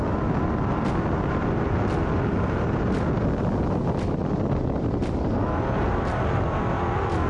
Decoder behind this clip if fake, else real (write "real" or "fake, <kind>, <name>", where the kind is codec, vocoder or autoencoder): real